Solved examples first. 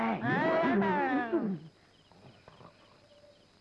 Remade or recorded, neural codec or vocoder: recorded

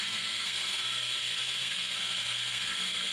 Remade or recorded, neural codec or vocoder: remade, codec, SNAC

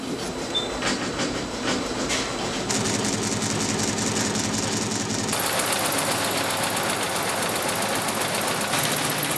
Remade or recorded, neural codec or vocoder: recorded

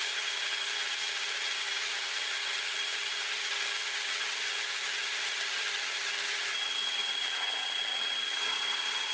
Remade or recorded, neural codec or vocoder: remade, vocoder, HiFi-GAN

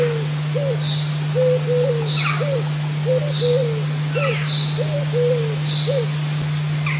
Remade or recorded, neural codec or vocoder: recorded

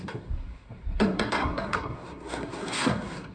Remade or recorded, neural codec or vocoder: remade, codec, SNAC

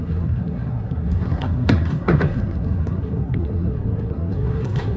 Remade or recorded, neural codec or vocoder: remade, codec, SNAC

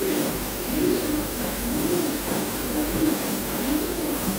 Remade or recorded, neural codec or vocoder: remade, codec, DAC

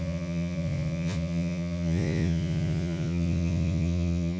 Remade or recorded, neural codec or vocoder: remade, vocoder, Vocos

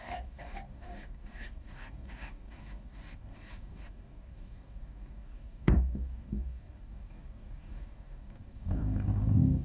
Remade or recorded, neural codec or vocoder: remade, codec, DAC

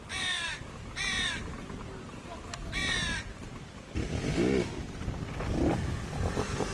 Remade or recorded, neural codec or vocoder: recorded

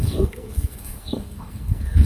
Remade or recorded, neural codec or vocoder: remade, codec, SNAC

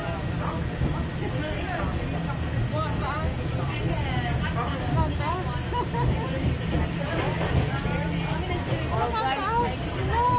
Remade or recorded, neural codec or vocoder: recorded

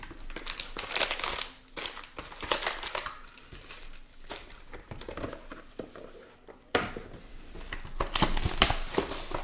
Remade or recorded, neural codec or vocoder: recorded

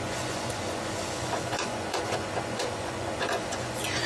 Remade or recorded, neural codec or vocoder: remade, vocoder, Vocos